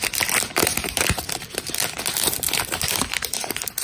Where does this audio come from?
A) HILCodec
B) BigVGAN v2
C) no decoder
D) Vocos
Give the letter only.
B